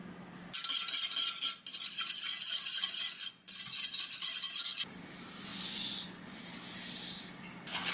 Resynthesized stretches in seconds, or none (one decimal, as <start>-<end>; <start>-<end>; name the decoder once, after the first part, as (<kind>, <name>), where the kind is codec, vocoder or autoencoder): 2.3-3.5 (vocoder, Vocos); 5.5-6.4